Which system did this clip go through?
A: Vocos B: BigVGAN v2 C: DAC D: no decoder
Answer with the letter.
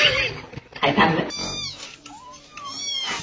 D